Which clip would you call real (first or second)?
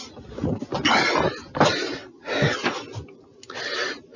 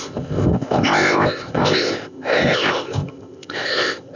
first